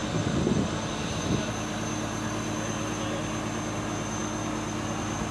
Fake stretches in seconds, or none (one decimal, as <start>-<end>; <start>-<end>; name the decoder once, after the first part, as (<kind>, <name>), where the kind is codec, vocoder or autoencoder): none